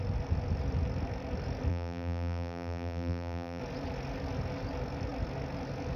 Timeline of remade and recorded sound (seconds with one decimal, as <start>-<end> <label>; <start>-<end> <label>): 0.0-1.7 recorded; 1.7-3.6 remade; 3.6-6.0 recorded